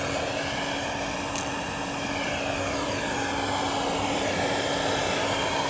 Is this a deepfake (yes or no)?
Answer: no